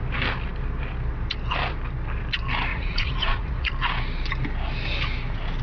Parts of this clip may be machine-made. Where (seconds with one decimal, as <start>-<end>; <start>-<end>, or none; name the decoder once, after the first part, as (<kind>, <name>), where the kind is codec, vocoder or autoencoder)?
2.7-3.7 (vocoder, Vocos)